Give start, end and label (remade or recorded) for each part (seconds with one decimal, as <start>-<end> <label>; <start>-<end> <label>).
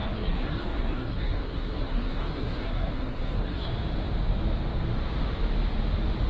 0.0-3.7 remade; 3.7-6.3 recorded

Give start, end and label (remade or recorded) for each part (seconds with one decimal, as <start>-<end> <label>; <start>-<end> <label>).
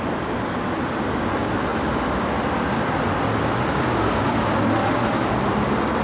0.0-6.0 recorded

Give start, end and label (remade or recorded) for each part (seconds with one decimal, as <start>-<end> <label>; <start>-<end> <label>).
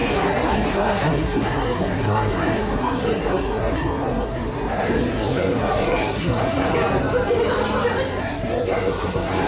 0.0-6.7 remade; 6.7-8.2 recorded; 8.2-9.5 remade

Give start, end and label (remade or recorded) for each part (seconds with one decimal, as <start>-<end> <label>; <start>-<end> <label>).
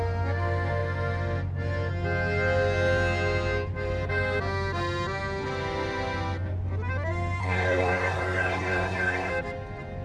0.0-7.4 recorded; 7.4-9.3 remade; 9.3-10.0 recorded